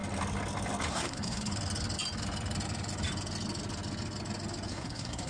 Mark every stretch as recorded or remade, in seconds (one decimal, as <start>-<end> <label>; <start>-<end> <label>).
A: 0.0-0.9 recorded; 0.9-1.5 remade; 1.5-4.7 recorded; 4.7-5.3 remade